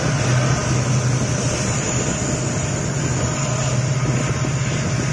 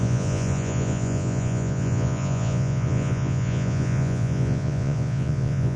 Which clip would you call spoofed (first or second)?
second